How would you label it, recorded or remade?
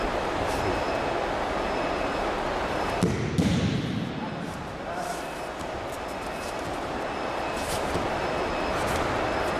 recorded